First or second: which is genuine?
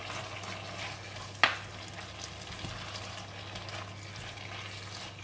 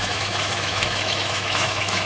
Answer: first